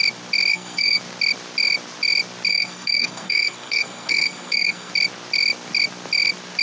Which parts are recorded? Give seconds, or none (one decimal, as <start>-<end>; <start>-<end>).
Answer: 0.0-0.5; 1.0-2.5; 4.9-6.6